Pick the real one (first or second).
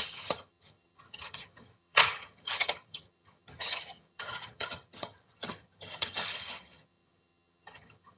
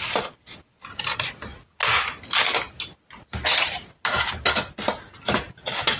second